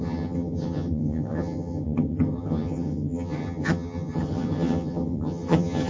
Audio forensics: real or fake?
fake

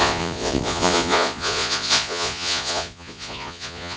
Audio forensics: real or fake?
fake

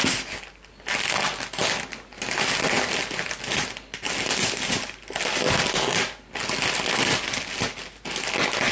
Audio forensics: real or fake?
real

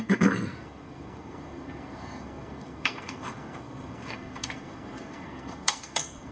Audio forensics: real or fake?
fake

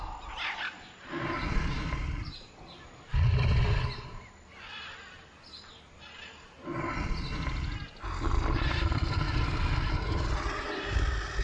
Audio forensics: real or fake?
real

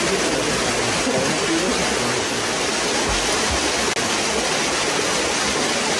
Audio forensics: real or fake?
real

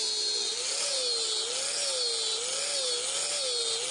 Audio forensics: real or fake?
real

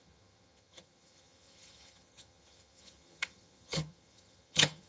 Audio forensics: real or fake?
fake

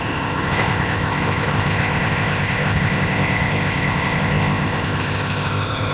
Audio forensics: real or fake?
fake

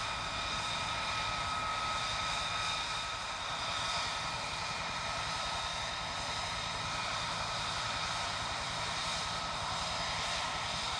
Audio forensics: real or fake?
real